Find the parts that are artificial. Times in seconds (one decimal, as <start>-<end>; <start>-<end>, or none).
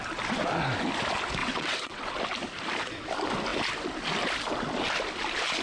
1.4-2.1